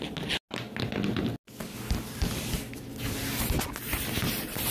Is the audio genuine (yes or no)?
yes